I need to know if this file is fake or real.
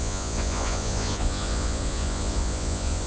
fake